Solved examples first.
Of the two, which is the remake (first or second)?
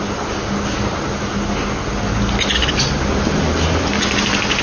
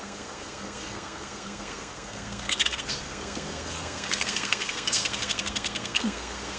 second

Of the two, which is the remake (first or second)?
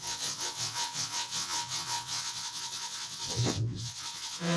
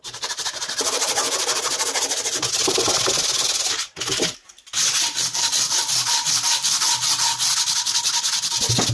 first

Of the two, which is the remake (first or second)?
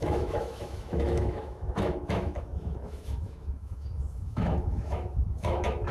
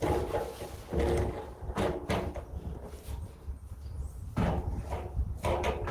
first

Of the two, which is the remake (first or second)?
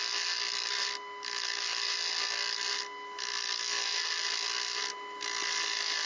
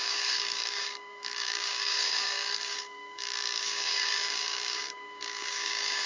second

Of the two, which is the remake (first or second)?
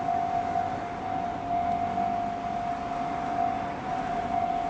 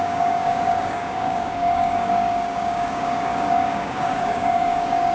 second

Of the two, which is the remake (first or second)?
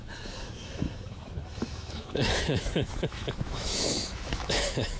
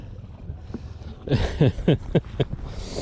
first